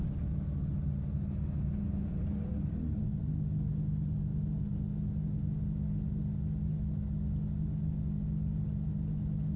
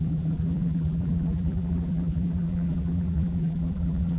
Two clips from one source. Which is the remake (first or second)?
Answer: second